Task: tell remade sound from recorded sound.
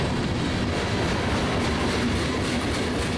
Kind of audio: recorded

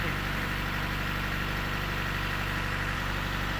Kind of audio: recorded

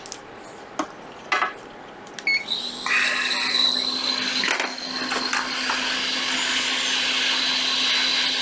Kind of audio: recorded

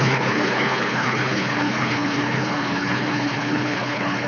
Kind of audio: remade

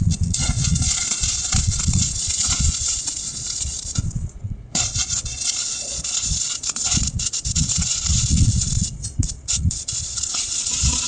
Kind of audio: remade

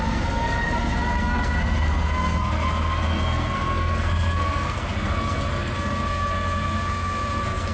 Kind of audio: remade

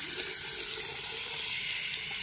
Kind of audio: recorded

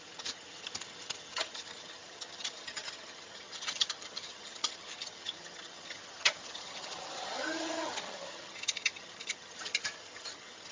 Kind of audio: remade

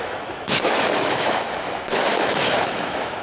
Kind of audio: remade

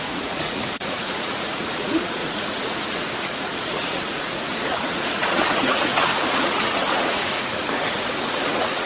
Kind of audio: remade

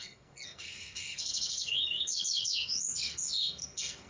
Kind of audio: remade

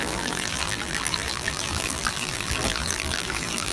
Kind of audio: remade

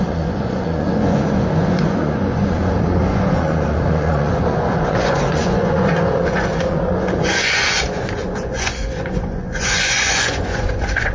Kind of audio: remade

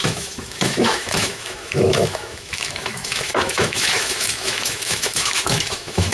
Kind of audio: remade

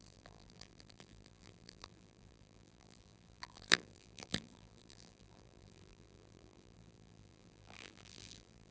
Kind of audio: remade